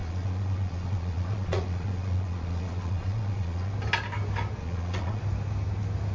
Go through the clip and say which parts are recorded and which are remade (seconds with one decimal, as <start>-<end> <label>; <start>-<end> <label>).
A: 0.0-3.7 remade; 3.7-4.6 recorded; 4.6-5.2 remade; 5.2-6.1 recorded